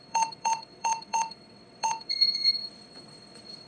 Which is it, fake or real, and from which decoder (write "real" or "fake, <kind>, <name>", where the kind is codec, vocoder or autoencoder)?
fake, vocoder, WaveNeXt